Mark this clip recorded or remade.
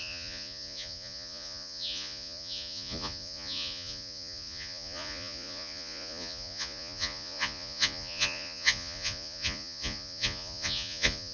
remade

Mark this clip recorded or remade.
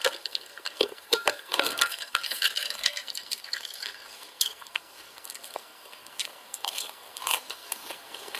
remade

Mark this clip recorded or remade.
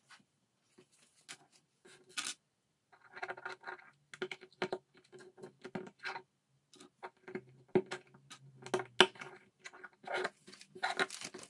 recorded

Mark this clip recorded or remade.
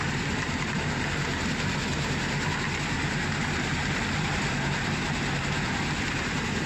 recorded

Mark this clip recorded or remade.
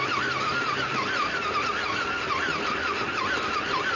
recorded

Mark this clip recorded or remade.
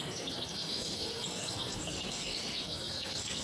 remade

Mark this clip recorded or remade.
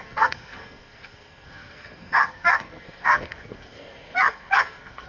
remade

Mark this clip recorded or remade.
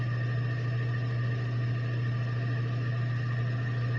recorded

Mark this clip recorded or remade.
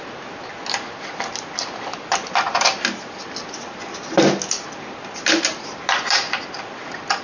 recorded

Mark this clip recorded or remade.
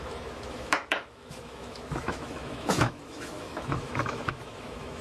remade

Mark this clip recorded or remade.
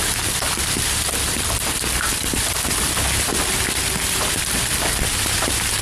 remade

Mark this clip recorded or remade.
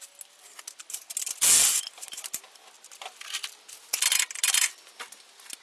recorded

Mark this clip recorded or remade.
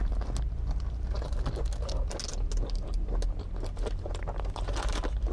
recorded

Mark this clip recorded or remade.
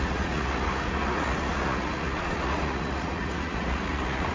remade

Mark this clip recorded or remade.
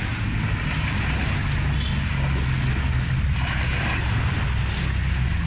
recorded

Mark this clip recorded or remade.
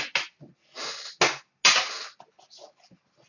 recorded